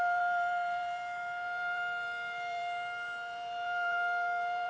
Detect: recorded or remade remade